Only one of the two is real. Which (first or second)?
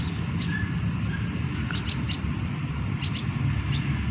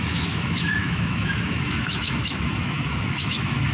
first